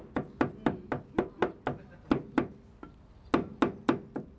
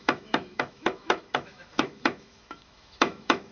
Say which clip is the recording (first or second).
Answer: first